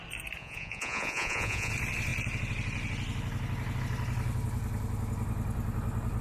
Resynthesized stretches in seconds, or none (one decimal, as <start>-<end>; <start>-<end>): 0.4-1.7